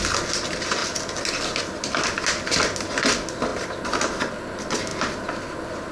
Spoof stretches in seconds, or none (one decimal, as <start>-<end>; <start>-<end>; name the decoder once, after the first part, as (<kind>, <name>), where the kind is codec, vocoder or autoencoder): none